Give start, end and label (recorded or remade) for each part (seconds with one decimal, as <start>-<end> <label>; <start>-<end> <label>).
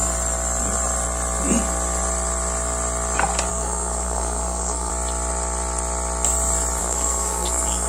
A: 0.0-3.5 recorded; 3.5-4.9 remade; 4.9-6.8 recorded; 6.8-7.9 remade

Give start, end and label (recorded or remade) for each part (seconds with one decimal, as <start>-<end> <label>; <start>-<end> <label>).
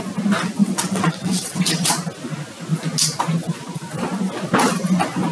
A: 0.0-0.6 recorded; 0.6-1.9 remade; 1.9-5.3 recorded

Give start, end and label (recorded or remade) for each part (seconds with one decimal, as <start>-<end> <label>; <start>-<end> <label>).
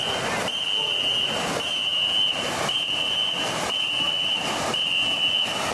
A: 0.0-5.7 recorded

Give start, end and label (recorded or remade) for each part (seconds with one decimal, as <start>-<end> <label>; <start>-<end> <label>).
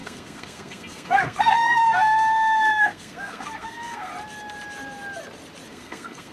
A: 0.0-4.1 remade; 4.1-5.7 recorded; 5.7-6.3 remade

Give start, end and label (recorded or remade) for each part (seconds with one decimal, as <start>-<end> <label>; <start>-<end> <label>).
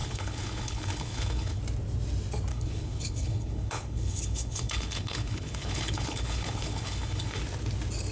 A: 0.0-1.6 remade; 1.6-2.5 recorded; 2.5-7.4 remade; 7.4-8.1 recorded